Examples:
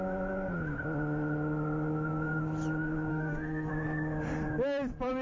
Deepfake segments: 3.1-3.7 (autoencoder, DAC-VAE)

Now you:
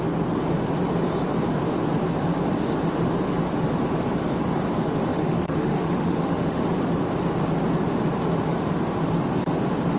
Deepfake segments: 5.1-6.6 (autoencoder, DAC-VAE)

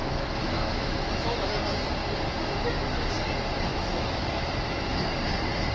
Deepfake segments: 0.0-1.5 (autoencoder, DAC-VAE); 3.7-5.0

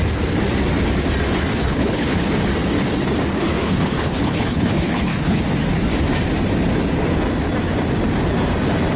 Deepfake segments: 1.5-2.3 (codec, HILCodec); 3.3-5.4